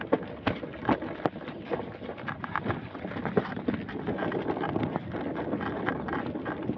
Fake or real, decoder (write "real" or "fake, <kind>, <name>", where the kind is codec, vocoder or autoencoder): real